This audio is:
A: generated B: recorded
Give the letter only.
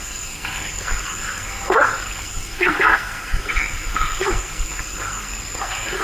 A